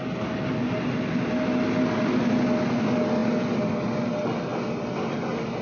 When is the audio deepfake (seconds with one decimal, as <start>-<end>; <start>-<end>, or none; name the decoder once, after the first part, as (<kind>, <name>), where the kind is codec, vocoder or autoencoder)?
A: none